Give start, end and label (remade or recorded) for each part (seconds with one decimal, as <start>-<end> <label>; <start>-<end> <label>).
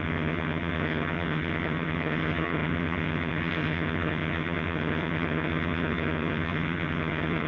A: 0.0-7.5 remade